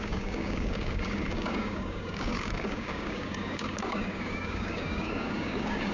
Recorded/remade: remade